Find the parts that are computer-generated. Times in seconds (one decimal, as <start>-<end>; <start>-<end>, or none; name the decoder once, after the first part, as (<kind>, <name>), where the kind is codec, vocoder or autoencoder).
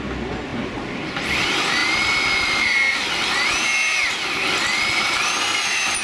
none